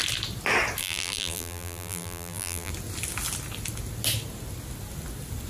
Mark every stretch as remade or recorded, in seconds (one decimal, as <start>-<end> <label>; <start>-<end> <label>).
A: 0.0-0.8 recorded; 0.8-2.7 remade; 2.7-5.5 recorded